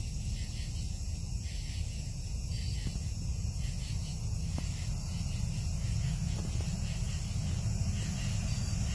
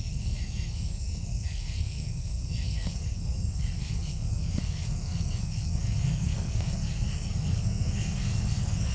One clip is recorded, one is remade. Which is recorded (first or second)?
first